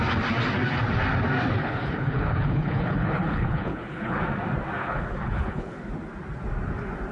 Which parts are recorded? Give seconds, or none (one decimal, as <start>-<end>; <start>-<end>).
0.0-1.6; 4.2-4.8; 5.9-7.1